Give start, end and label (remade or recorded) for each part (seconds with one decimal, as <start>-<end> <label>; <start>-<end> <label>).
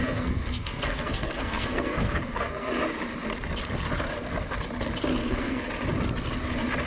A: 0.0-2.7 remade; 2.7-5.2 recorded; 5.2-5.7 remade; 5.7-6.9 recorded